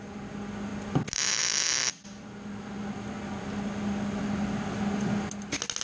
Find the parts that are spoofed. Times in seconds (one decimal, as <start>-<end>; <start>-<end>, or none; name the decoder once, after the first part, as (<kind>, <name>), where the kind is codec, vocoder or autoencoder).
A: none